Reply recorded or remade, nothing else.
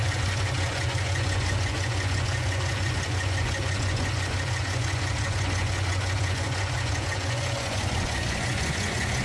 remade